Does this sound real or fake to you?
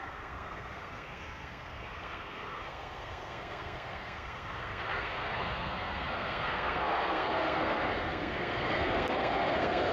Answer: fake